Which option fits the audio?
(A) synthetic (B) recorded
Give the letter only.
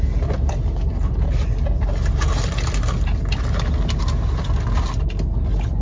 B